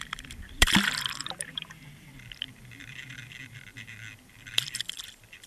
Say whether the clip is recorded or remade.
remade